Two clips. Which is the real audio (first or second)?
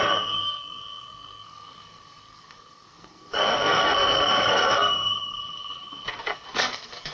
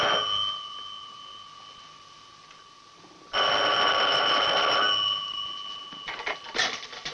second